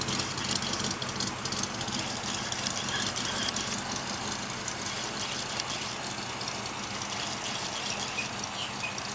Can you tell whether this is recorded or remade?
recorded